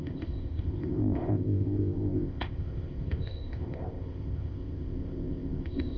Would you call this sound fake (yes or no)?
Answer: yes